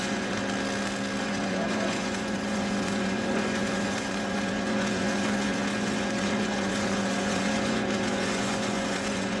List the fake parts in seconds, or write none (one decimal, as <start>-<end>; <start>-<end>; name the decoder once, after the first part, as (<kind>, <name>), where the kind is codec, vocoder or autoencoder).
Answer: 0.0-0.4 (vocoder, Vocos); 1.2-9.4